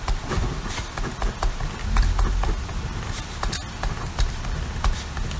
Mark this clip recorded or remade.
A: recorded